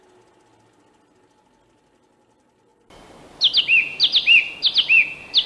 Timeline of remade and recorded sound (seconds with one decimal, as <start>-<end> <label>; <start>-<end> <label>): 0.0-5.5 recorded